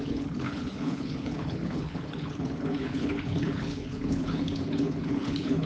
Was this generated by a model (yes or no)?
yes